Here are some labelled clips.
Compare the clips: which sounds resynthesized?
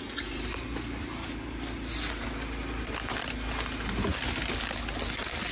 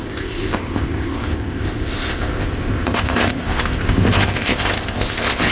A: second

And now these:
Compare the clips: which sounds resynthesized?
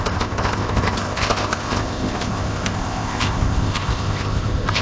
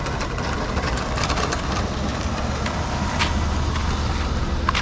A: first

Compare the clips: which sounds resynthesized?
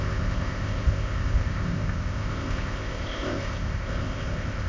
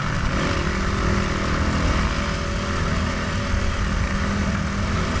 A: first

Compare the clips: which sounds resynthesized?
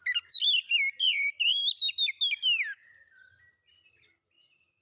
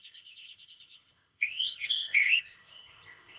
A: second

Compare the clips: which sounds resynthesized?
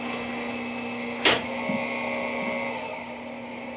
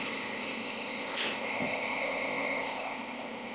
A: second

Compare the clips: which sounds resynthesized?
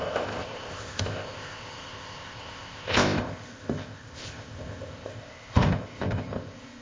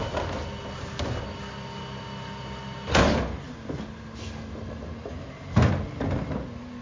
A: first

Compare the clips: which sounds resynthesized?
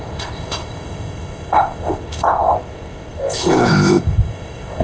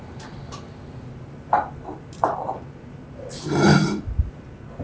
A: first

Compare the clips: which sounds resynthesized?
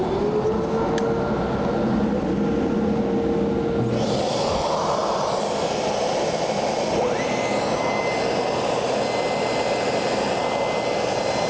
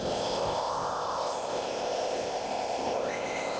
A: second